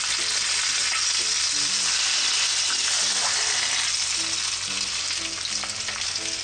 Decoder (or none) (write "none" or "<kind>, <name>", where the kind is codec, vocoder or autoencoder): none